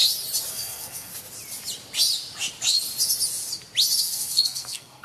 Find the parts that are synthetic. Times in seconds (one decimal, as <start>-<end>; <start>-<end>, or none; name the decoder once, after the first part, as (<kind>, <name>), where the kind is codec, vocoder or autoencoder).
0.5-1.1 (codec, SNAC); 4.0-5.0